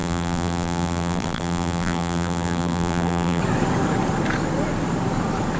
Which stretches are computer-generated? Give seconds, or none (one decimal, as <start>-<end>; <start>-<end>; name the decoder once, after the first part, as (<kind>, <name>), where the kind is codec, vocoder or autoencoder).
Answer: 0.0-3.4 (vocoder, BigVGAN v2)